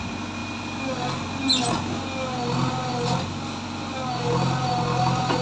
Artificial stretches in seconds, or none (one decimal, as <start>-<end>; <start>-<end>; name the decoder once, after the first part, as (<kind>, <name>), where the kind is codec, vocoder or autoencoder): none